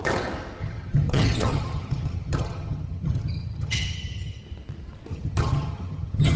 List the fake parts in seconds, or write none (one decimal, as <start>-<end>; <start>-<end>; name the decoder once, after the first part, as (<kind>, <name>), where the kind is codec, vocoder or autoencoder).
0.6-4.4 (vocoder, HiFi-GAN); 5.1-6.4